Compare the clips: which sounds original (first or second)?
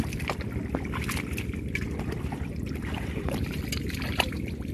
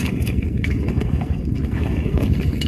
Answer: first